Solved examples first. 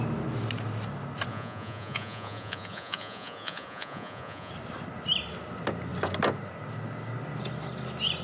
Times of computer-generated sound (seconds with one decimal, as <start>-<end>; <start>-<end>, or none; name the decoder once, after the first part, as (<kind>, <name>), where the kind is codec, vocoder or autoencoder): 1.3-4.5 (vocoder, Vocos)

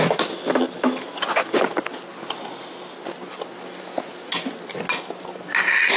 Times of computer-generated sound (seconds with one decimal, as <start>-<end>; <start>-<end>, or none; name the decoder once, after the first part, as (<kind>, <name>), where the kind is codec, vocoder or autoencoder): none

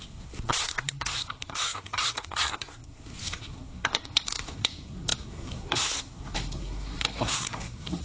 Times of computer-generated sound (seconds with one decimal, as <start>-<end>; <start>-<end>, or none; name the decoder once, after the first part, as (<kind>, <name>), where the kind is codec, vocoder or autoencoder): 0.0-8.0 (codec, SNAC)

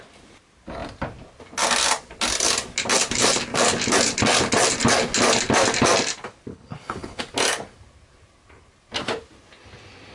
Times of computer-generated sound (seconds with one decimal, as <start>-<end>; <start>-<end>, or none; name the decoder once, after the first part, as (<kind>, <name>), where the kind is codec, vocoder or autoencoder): 6.5-7.2 (codec, HILCodec)

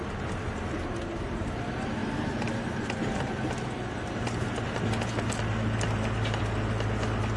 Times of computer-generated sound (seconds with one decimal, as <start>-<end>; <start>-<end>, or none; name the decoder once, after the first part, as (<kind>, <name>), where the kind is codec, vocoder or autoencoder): none

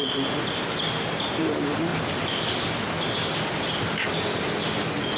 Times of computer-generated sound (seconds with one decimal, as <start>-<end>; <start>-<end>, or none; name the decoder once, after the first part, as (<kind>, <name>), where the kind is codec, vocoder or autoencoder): none

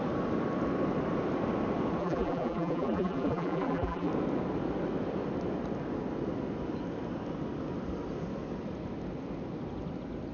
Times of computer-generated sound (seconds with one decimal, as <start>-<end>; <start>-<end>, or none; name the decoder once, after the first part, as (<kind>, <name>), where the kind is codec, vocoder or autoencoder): 2.0-4.1 (vocoder, BigVGAN v2)